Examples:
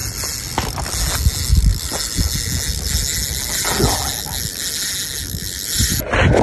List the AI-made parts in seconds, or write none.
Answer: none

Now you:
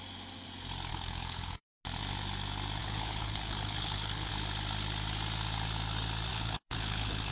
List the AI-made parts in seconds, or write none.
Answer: 0.9-1.7 (codec, HILCodec); 2.8-4.3; 6.3-7.3

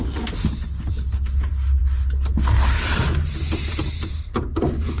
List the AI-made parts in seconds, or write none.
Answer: none

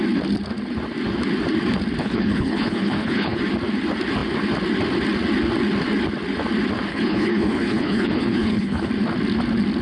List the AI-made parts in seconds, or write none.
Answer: 2.0-3.4 (codec, HILCodec); 6.9-8.9

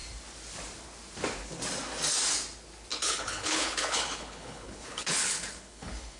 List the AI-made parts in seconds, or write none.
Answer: 2.9-6.2 (codec, HILCodec)

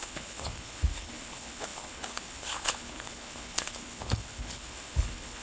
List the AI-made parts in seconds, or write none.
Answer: 0.0-5.4 (codec, HILCodec)